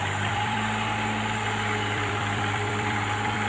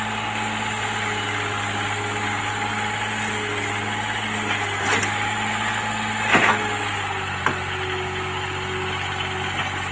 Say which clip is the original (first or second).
second